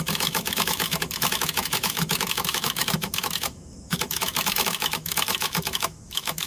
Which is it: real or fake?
fake